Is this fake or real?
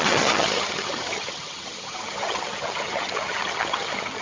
fake